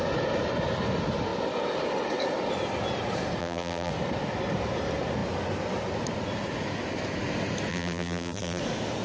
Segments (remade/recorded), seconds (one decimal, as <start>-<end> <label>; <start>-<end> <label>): 0.0-3.4 recorded; 3.4-3.9 remade; 3.9-7.7 recorded; 7.7-8.6 remade; 8.6-9.0 recorded